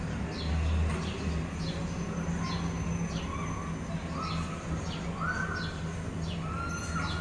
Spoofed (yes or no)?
no